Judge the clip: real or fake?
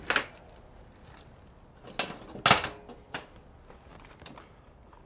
real